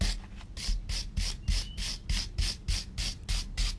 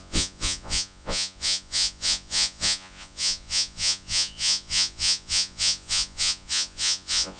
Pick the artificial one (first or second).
second